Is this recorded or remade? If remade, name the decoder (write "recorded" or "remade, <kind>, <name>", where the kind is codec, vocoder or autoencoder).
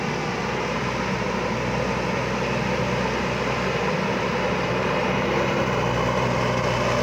recorded